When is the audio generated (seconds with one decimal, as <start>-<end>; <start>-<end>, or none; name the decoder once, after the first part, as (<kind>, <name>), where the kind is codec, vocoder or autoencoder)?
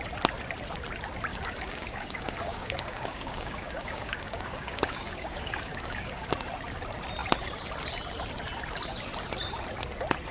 1.3-6.3 (codec, DAC)